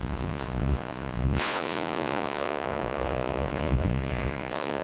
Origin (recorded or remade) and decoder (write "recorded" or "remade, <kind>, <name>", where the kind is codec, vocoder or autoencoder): remade, vocoder, Vocos